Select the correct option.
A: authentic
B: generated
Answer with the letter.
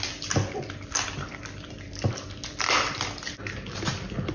B